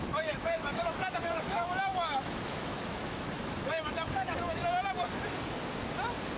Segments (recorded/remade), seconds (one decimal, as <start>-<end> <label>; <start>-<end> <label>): 0.0-4.6 remade; 4.6-6.4 recorded